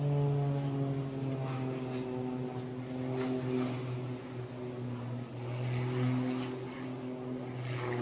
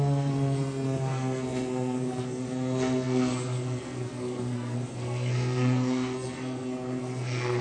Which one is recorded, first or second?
first